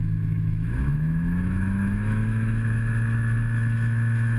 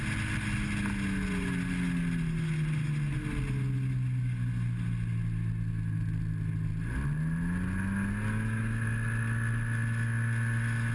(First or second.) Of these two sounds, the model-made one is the first